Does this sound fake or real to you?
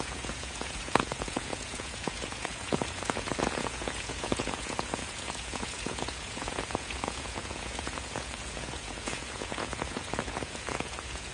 fake